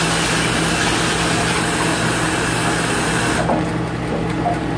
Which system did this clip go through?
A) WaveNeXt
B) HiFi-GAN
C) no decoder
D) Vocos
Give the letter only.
C